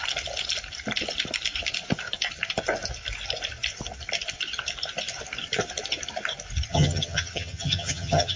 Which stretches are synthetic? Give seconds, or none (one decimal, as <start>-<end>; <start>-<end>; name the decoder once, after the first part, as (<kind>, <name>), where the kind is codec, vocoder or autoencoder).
6.7-8.4 (vocoder, HiFi-GAN)